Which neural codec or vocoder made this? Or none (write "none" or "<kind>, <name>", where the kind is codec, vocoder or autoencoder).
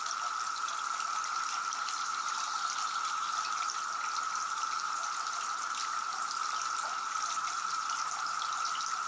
none